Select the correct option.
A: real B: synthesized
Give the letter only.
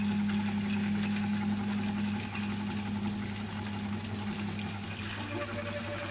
A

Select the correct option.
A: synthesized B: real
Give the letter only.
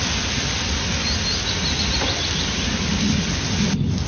B